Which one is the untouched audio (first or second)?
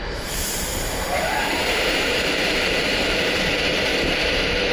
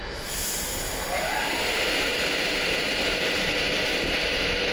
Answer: second